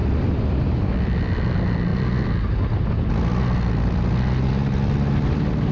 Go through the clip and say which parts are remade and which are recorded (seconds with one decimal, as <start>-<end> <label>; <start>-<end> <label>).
0.0-5.7 recorded